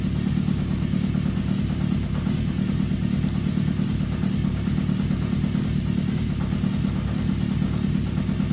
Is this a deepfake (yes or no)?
no